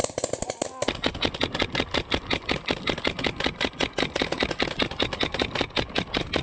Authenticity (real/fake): real